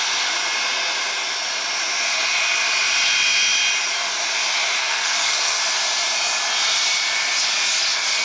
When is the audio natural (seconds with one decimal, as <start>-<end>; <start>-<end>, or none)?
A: 0.0-4.8; 5.6-8.2